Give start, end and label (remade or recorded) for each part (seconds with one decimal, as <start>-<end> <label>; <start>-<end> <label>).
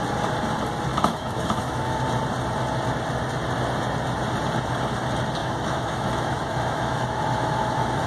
0.0-0.9 recorded; 0.9-2.0 remade; 2.0-5.4 recorded; 5.4-8.1 remade